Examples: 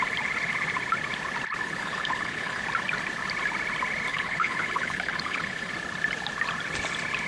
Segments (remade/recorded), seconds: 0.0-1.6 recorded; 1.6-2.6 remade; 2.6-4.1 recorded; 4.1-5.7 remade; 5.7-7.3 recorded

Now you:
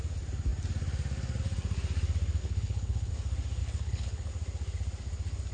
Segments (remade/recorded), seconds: 0.0-2.4 recorded; 2.4-3.1 remade; 3.1-3.6 recorded; 3.6-4.3 remade; 4.3-5.5 recorded